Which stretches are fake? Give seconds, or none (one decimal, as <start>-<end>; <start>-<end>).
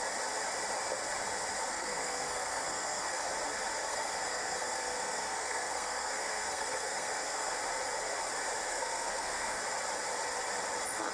1.7-3.3; 3.9-7.6; 8.7-9.6